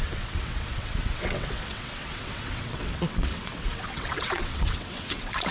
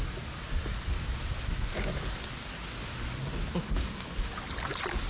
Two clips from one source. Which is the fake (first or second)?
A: first